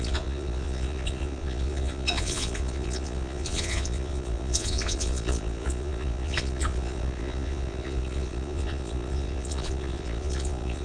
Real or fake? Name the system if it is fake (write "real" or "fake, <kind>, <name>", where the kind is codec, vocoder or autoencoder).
fake, vocoder, Vocos